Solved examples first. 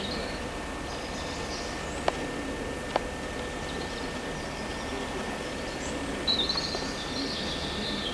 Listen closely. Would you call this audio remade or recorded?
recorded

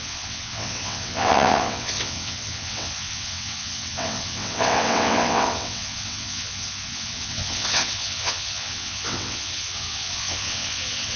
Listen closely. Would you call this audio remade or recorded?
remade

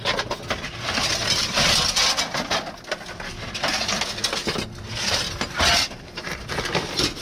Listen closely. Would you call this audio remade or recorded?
recorded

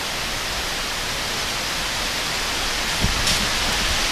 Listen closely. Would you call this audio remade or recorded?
recorded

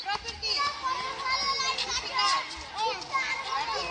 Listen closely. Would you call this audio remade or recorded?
recorded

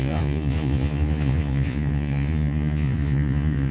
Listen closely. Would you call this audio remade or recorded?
remade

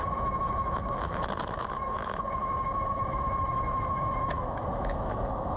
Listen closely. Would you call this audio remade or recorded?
remade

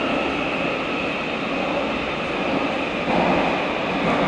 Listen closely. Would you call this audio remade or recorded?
recorded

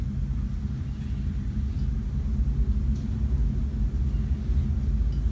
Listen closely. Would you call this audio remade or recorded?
recorded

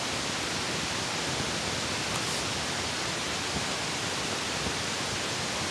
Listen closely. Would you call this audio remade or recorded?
recorded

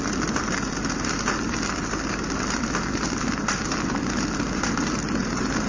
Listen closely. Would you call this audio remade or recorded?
recorded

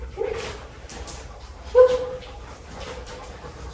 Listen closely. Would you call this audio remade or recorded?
remade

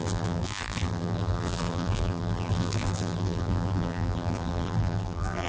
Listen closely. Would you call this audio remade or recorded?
remade